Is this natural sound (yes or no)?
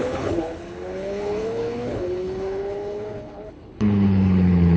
no